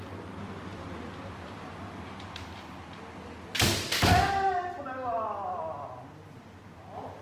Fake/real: real